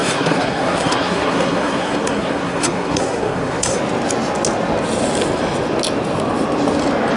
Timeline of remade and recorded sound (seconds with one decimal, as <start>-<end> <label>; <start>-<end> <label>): 0.0-3.8 remade; 3.8-7.2 recorded